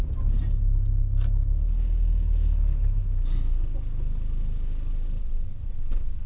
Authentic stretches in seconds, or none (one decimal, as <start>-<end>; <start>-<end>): 0.0-5.2